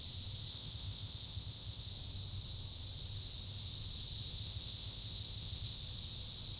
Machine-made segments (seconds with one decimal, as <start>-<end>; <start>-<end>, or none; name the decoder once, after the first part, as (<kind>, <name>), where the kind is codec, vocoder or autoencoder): 0.5-1.9 (codec, ZipCodec); 4.3-5.8